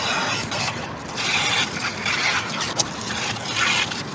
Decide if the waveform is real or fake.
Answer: real